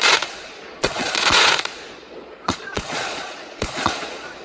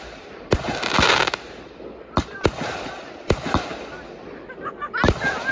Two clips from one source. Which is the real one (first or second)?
second